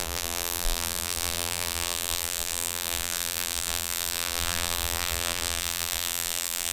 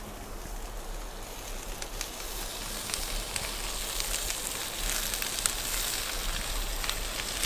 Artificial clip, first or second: first